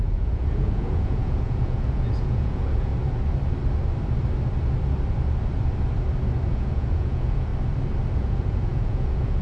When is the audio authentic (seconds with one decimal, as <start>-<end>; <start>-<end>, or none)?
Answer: 2.9-6.5; 7.5-8.2